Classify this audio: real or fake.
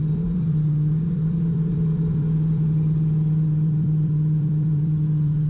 fake